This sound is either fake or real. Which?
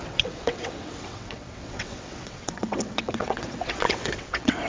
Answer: fake